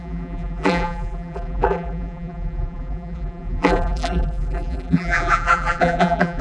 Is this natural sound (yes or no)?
no